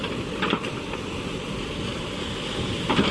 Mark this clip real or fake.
fake